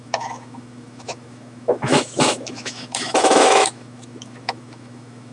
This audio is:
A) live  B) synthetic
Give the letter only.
B